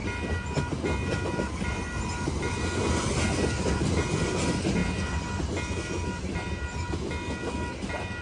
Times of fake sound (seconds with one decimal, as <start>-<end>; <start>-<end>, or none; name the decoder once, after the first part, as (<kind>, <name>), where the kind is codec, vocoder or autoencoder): none